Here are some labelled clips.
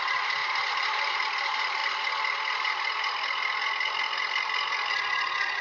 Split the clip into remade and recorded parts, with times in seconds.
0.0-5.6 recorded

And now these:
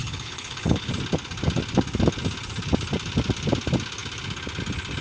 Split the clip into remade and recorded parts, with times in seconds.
0.0-0.9 remade; 0.9-5.0 recorded

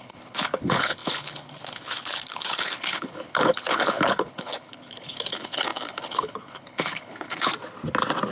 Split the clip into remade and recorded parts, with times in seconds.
0.0-7.5 remade; 7.5-8.3 recorded

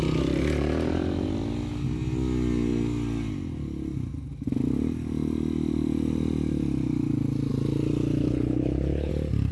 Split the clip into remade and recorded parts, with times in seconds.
0.0-8.2 recorded; 8.2-9.1 remade; 9.1-9.5 recorded

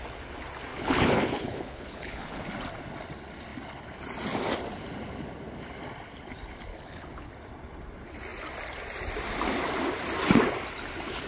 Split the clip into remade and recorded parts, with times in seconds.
0.0-0.7 recorded; 0.7-2.4 remade; 2.4-6.7 recorded; 6.7-7.3 remade; 7.3-11.3 recorded

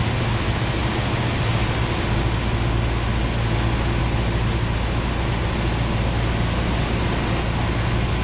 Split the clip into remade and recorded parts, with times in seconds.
0.0-8.2 recorded

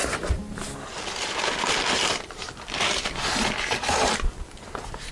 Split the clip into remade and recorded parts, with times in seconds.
0.0-5.1 recorded

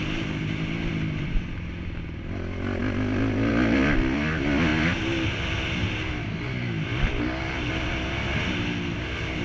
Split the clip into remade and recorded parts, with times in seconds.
0.0-9.4 recorded